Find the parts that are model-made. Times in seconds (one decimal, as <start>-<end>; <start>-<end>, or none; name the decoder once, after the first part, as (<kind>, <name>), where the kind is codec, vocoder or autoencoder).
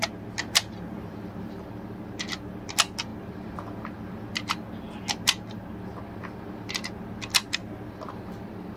0.4-1.6 (vocoder, BigVGAN v2); 7.6-8.2